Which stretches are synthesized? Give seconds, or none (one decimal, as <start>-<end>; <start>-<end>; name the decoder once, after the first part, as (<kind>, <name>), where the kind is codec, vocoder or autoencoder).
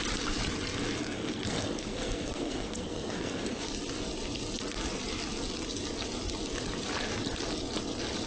1.0-3.6 (codec, SNAC)